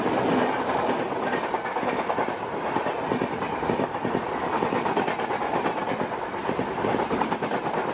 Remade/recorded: recorded